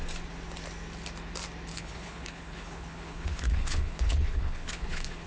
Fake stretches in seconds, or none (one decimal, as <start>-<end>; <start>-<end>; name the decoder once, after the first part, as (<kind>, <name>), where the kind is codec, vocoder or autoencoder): 1.7-5.3 (codec, HILCodec)